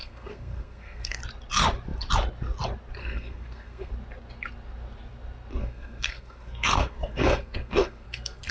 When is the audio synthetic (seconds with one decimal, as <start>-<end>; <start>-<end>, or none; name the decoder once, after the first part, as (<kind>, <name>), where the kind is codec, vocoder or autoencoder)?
0.0-1.2 (codec, SNAC); 3.0-3.9; 5.6-8.5